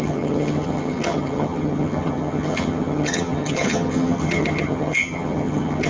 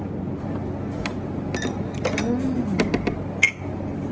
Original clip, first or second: second